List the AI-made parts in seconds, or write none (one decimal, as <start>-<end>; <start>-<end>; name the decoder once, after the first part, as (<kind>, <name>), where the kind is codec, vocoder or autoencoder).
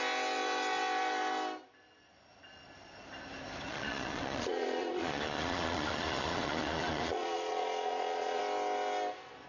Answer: 3.7-8.4 (vocoder, Vocos)